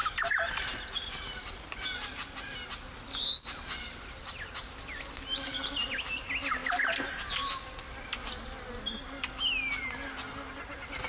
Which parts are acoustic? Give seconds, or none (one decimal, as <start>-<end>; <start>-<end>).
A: 0.0-11.1